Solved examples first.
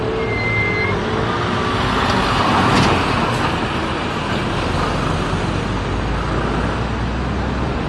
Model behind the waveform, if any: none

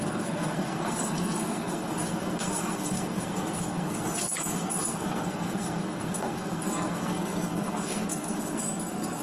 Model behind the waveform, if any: codec, SNAC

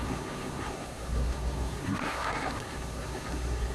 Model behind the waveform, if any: codec, SNAC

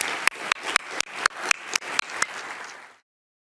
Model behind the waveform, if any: none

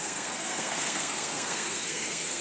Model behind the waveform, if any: codec, SNAC